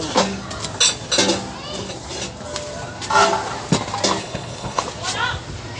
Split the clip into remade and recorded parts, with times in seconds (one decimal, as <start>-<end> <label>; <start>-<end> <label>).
0.0-4.2 recorded; 4.2-4.8 remade; 4.8-5.8 recorded